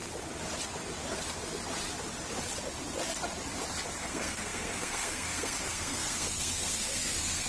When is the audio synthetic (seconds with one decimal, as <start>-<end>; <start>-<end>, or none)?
4.0-7.5